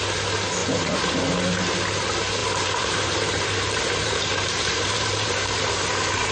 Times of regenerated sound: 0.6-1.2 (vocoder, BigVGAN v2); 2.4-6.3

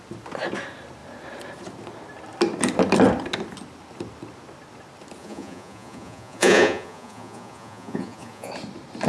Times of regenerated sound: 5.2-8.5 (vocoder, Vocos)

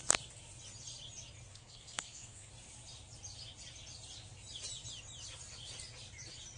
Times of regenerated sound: 1.5-2.5 (codec, SNAC)

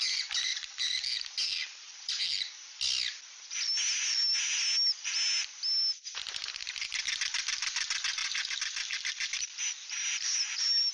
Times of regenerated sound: 0.5-2.2 (vocoder, BigVGAN v2); 8.2-10.9

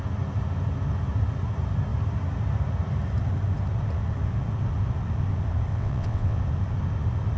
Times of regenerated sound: 5.7-6.4 (vocoder, WaveNeXt)